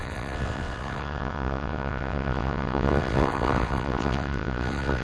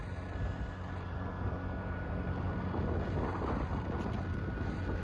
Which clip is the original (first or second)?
second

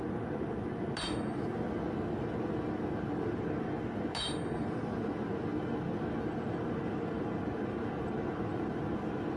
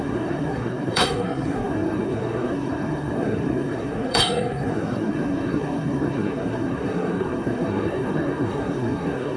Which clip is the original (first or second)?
first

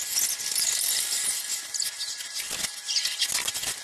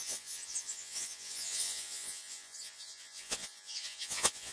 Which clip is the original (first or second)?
first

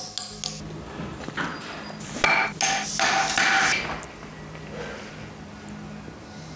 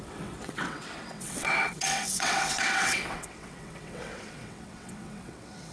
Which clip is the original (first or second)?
first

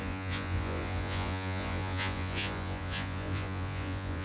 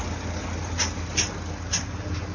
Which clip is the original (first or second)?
second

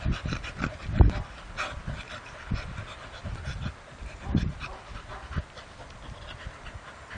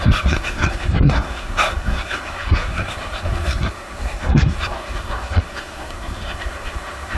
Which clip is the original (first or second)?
first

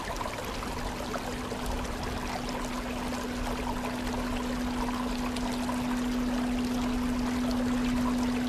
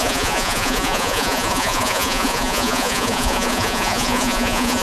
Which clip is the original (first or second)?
first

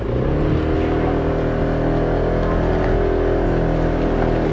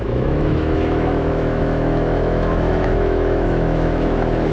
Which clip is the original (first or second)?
first